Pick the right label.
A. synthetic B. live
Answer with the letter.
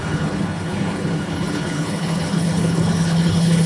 A